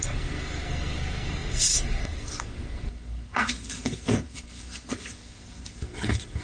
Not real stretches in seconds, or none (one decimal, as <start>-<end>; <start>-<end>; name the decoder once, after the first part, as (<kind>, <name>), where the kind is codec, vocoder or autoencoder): 0.0-6.4 (codec, SNAC)